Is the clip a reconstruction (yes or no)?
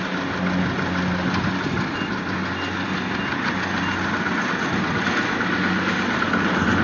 no